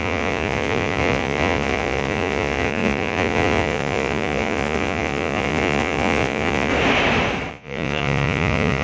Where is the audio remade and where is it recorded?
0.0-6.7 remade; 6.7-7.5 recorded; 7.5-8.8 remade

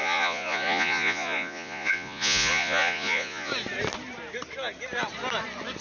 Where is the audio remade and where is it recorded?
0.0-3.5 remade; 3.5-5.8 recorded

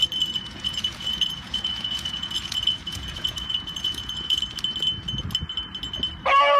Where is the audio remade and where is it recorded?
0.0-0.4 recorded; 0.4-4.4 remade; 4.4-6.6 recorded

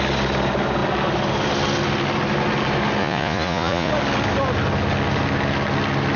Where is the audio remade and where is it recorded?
0.0-3.0 recorded; 3.0-3.9 remade; 3.9-6.2 recorded